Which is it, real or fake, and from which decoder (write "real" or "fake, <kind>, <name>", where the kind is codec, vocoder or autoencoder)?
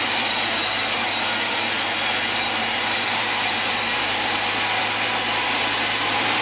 fake, vocoder, BigVGAN v2